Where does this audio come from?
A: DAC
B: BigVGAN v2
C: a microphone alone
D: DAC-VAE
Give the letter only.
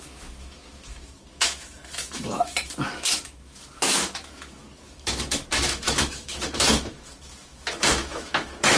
D